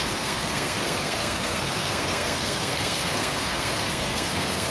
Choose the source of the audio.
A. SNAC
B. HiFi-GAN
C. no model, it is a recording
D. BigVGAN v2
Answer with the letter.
A